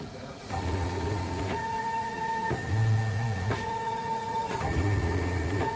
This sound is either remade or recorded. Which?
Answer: remade